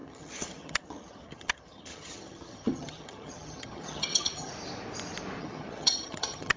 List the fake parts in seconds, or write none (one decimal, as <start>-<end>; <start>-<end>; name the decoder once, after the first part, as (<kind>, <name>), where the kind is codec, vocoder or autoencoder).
0.0-4.5 (vocoder, HiFi-GAN); 5.4-6.6